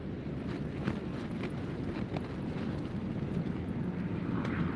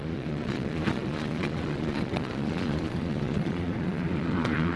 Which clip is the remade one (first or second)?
second